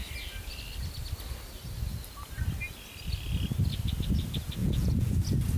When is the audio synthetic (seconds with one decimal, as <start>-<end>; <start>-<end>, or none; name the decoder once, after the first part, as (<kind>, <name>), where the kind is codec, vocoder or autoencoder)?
4.6-5.1 (vocoder, Vocos)